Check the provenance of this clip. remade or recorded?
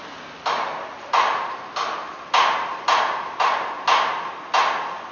recorded